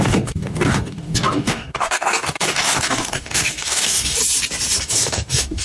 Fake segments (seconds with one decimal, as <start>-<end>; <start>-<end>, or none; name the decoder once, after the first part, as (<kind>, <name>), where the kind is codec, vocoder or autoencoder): 0.0-4.2 (codec, DAC); 4.8-5.6